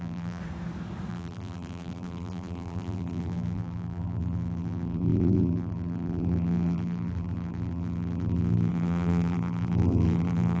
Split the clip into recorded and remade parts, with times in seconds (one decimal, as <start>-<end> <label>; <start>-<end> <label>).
0.0-0.4 remade; 0.4-1.1 recorded; 1.1-10.6 remade